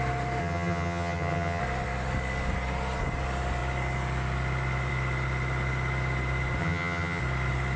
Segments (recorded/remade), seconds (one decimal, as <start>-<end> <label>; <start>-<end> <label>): 0.0-0.4 recorded; 0.4-1.6 remade; 1.6-6.6 recorded; 6.6-7.2 remade; 7.2-7.8 recorded